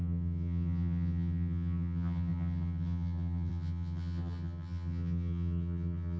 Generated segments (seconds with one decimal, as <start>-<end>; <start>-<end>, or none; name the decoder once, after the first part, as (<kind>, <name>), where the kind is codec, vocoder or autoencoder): 0.0-6.2 (vocoder, HiFi-GAN)